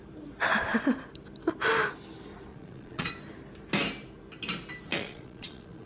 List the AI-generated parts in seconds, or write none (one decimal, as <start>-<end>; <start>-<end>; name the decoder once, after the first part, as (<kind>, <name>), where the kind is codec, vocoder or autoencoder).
2.5-3.1 (vocoder, Vocos); 4.9-5.9

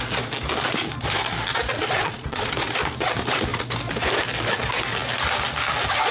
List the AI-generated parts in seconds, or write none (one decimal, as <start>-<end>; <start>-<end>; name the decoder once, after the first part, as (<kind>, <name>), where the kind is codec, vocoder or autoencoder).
1.5-2.5 (vocoder, Vocos)

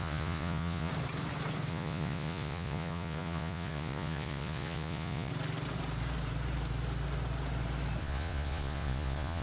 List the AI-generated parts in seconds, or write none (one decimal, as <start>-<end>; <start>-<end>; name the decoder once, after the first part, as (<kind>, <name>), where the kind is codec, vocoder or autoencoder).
0.0-0.9 (vocoder, Vocos); 1.7-5.3; 8.0-9.4

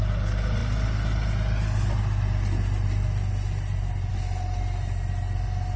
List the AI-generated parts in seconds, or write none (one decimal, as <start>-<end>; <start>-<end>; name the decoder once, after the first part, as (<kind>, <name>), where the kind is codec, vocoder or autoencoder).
none

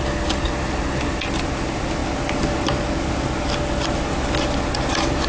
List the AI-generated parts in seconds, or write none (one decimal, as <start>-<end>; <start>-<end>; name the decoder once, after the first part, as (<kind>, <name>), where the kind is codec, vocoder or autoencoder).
none

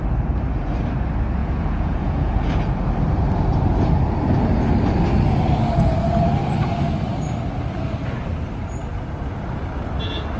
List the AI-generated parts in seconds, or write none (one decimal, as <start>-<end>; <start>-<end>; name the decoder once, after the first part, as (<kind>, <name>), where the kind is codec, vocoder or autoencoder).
1.4-2.3 (vocoder, Vocos)

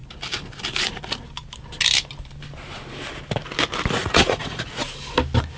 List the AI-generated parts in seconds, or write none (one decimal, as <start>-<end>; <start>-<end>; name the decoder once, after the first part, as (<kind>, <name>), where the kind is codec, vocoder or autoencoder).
4.0-4.8 (vocoder, Vocos)